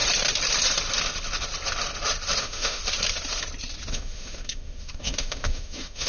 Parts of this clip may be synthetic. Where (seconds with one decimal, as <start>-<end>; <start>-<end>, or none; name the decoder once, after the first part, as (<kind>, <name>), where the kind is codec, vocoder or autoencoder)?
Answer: 2.4-2.8 (autoencoder, DAC-VAE); 3.9-6.1